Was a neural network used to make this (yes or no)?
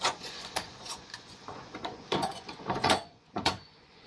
yes